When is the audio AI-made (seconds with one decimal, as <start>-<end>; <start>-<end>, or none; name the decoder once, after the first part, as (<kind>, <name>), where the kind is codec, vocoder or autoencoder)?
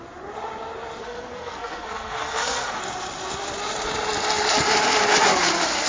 1.0-2.8 (codec, SNAC)